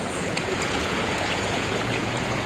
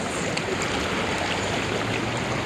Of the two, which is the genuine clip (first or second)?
second